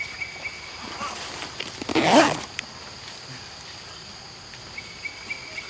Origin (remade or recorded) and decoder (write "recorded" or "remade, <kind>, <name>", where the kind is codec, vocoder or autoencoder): recorded